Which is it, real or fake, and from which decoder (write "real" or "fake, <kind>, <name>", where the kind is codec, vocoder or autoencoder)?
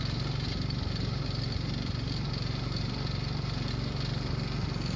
real